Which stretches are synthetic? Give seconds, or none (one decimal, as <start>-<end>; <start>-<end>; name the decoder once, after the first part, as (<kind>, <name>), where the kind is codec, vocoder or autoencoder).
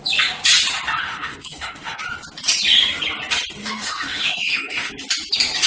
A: 1.0-2.0 (autoencoder, DAC-VAE); 3.6-4.9